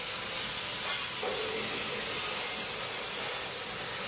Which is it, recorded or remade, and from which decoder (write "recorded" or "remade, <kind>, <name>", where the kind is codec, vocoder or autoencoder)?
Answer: recorded